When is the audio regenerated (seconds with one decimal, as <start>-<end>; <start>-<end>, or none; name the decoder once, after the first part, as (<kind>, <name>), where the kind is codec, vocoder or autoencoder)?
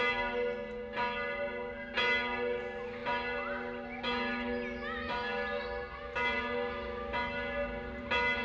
none